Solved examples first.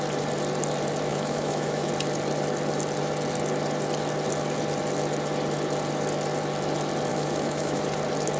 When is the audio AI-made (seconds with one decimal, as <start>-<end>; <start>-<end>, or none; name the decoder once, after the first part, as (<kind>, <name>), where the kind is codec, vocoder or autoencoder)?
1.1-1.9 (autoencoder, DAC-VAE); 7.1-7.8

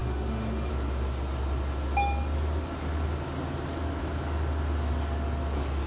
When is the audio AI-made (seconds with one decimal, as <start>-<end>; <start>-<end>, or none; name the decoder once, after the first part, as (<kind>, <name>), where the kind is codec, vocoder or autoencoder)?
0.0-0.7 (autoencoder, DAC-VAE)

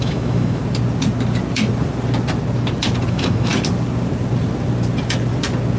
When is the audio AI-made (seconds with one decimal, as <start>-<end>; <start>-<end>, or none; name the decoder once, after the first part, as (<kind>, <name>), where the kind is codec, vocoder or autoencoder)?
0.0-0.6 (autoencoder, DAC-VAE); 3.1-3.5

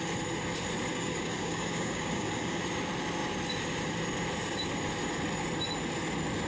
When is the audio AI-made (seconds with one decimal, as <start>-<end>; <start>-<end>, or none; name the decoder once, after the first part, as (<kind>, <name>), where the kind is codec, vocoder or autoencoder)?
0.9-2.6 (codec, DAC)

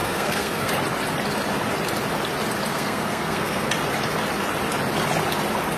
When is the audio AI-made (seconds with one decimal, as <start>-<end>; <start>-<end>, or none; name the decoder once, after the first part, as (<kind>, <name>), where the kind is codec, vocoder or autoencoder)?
0.0-0.7 (codec, SNAC); 2.7-3.7